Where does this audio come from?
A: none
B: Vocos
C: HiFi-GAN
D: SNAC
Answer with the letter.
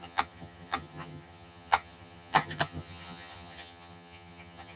C